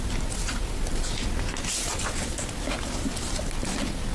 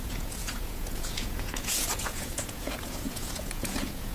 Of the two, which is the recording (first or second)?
first